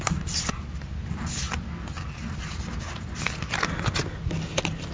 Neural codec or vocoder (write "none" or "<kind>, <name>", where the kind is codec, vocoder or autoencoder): none